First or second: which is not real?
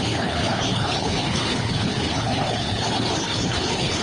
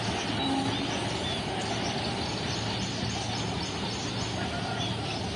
first